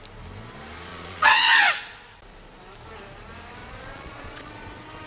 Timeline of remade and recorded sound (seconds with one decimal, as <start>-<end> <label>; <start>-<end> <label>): 0.0-0.9 recorded; 0.9-1.6 remade; 1.6-3.6 recorded; 3.6-4.5 remade; 4.5-5.1 recorded